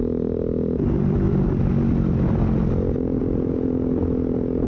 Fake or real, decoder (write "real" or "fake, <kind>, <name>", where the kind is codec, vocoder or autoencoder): real